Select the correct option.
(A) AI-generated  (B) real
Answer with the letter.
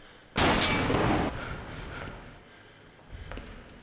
B